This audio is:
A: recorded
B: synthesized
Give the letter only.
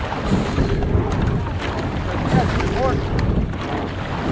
A